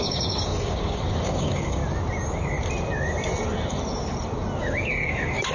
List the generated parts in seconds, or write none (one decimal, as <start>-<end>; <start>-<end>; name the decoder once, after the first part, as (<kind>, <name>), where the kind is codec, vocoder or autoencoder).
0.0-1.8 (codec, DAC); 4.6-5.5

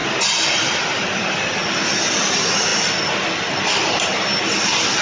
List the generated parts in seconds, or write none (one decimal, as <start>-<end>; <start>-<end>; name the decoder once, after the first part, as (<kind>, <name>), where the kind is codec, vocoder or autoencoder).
none

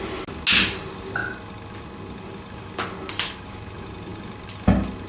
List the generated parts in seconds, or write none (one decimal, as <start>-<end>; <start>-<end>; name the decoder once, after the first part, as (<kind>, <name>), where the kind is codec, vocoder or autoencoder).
none

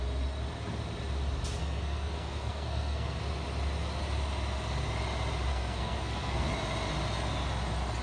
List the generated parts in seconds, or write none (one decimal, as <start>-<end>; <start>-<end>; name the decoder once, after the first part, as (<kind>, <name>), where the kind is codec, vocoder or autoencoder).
1.6-3.2 (codec, SNAC); 5.5-6.5